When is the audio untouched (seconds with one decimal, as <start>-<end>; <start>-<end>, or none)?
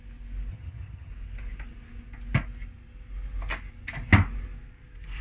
0.0-0.5; 1.1-5.2